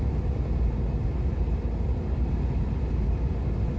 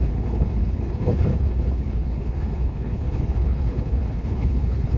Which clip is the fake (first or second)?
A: second